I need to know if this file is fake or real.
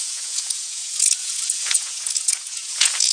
fake